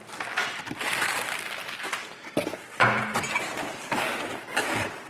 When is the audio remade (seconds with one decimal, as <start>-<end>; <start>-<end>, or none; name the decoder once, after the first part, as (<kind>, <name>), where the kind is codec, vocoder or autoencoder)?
none